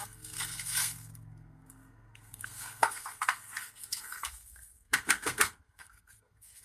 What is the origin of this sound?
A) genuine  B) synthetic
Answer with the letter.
B